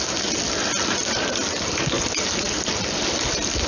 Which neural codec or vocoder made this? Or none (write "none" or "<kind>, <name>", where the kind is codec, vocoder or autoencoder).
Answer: none